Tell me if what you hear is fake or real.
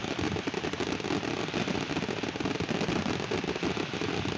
real